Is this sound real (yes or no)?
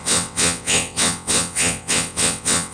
no